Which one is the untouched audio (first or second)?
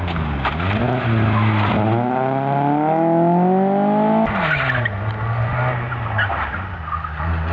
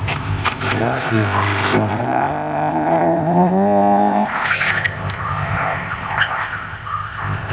first